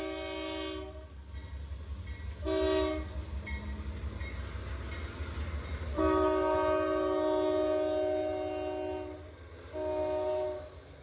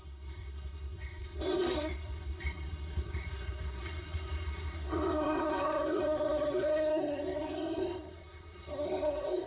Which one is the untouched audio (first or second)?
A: first